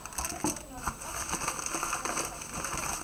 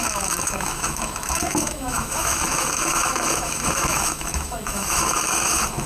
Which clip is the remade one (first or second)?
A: second